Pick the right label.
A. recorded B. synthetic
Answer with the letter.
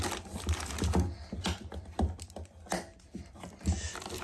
A